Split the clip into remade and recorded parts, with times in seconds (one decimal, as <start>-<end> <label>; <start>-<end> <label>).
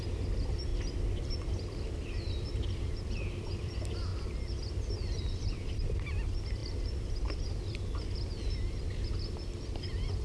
0.0-4.1 remade; 4.1-4.7 recorded; 4.7-10.2 remade